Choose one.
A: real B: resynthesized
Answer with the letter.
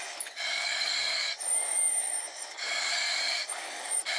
B